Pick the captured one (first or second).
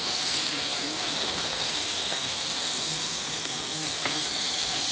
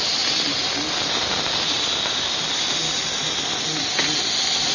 second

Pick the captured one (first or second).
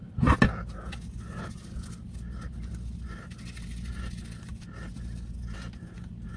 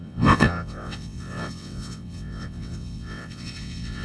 first